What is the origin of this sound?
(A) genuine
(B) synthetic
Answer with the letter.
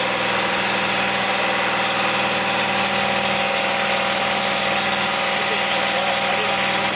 A